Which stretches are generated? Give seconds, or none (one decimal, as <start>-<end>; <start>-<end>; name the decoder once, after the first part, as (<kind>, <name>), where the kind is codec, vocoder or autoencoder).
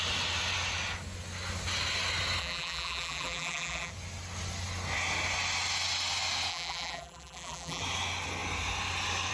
2.4-3.9 (vocoder, BigVGAN v2); 6.5-7.8